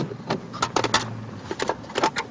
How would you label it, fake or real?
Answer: real